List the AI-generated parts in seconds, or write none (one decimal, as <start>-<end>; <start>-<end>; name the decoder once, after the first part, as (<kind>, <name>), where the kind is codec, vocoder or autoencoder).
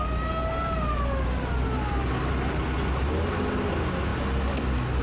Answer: none